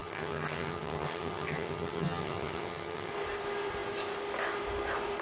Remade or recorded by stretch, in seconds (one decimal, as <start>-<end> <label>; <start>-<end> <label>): 0.0-3.1 remade; 3.1-5.2 recorded